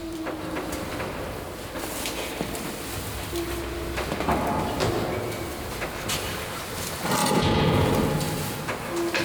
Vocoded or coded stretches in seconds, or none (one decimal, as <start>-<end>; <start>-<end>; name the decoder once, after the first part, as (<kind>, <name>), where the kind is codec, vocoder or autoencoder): 7.2-7.9 (vocoder, Vocos)

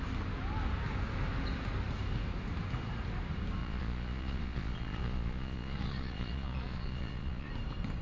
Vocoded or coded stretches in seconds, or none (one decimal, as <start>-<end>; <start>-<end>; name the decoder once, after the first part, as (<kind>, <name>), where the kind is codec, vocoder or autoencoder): 3.6-7.5 (vocoder, Vocos)

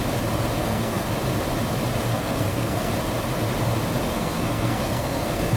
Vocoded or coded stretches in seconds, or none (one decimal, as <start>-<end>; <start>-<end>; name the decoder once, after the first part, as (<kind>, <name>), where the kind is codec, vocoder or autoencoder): 0.6-1.1 (codec, SNAC); 2.1-2.9; 4.1-5.6

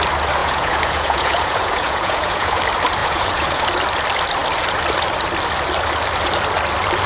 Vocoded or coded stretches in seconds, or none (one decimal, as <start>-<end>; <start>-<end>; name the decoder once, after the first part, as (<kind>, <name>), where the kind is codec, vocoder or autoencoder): 0.4-2.6 (vocoder, Vocos); 3.0-3.6

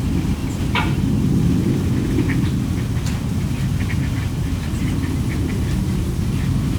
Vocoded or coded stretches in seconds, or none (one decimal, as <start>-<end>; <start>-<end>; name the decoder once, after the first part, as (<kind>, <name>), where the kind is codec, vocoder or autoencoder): 0.4-1.1 (vocoder, BigVGAN v2)

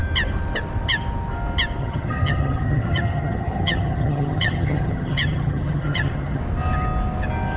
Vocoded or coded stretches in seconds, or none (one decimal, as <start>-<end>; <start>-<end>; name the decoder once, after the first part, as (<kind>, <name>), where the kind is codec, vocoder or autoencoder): 1.8-6.4 (vocoder, HiFi-GAN)

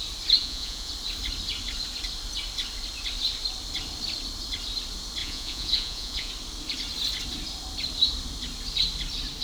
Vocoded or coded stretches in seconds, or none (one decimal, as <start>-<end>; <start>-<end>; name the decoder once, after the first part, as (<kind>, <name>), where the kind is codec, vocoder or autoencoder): 0.4-0.9 (vocoder, Vocos); 5.2-6.3

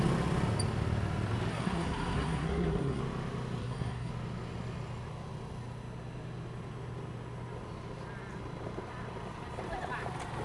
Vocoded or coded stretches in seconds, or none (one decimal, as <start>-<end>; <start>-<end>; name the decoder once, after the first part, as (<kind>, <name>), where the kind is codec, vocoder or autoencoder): 1.5-3.0 (codec, SNAC); 3.6-4.1